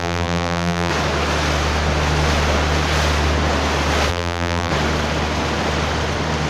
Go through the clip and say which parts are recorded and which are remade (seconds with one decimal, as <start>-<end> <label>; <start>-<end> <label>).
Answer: 0.0-0.9 remade; 0.9-4.1 recorded; 4.1-4.7 remade; 4.7-6.5 recorded